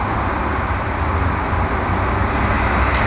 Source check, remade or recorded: recorded